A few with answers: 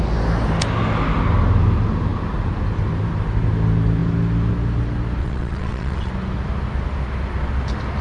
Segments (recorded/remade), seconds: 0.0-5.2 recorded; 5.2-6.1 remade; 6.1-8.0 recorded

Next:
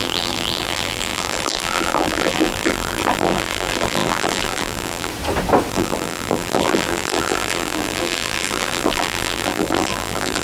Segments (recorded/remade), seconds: 0.0-5.1 remade; 5.1-5.7 recorded; 5.7-10.4 remade

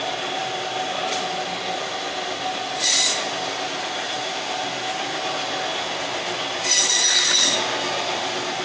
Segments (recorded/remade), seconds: 0.0-8.6 recorded

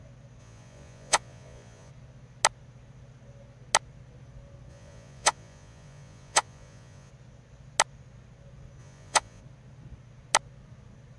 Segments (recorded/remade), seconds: 0.0-0.4 recorded; 0.4-1.9 remade; 1.9-4.7 recorded; 4.7-7.1 remade; 7.1-8.8 recorded; 8.8-9.4 remade; 9.4-11.2 recorded